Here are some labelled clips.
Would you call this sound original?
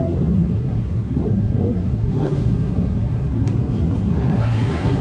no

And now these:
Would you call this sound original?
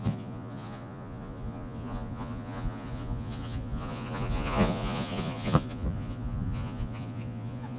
no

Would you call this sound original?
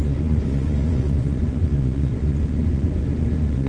no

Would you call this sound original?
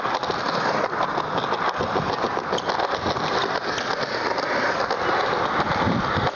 yes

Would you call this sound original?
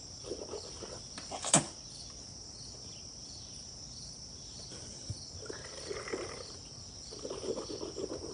yes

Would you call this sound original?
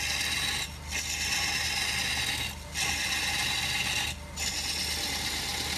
yes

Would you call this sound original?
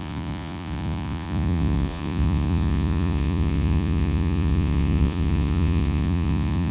no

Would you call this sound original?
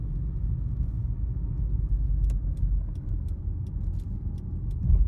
yes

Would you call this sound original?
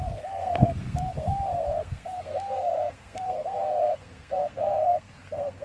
no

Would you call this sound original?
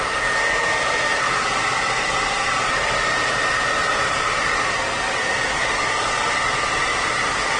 no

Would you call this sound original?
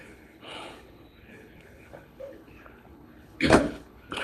no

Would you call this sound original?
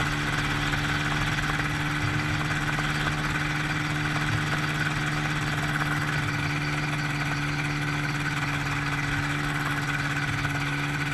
yes